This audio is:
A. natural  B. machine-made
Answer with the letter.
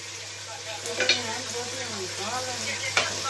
A